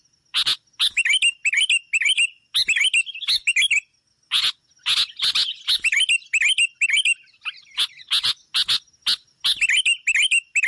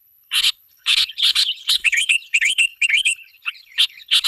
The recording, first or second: first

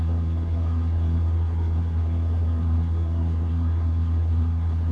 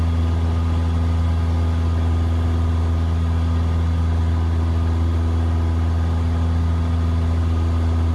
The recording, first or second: second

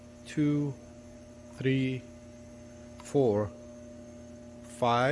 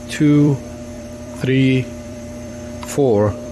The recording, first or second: first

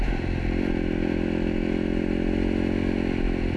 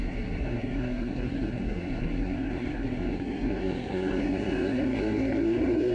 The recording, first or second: first